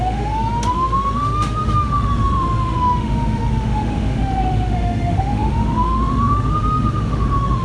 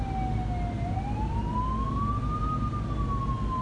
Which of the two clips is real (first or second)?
second